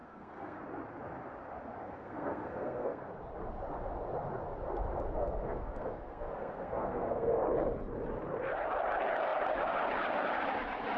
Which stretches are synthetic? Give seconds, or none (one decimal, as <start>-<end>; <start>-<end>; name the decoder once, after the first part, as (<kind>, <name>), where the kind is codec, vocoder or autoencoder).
0.0-0.6 (codec, SNAC); 1.8-3.1; 5.2-7.4